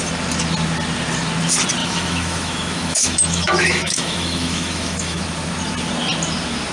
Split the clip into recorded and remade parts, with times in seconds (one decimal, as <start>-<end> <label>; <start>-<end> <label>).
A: 0.0-1.8 recorded; 1.8-5.2 remade; 5.2-6.7 recorded